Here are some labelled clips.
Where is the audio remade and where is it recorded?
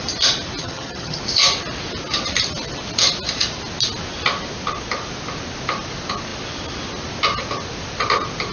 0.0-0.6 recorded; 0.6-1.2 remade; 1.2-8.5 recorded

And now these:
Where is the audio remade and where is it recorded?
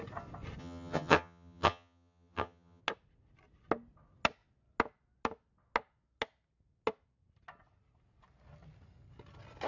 0.0-0.6 recorded; 0.6-2.8 remade; 2.8-9.7 recorded